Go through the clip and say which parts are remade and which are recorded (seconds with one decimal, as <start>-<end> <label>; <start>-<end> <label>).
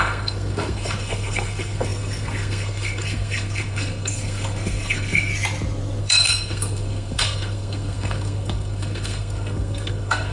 0.0-5.3 remade; 5.3-6.0 recorded; 6.0-10.3 remade